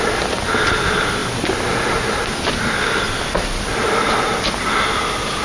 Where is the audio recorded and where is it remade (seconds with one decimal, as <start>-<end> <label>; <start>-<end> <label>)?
0.0-5.4 recorded